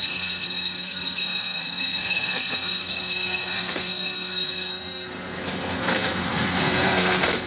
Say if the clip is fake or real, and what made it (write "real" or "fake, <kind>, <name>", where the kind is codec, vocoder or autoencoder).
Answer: fake, codec, SNAC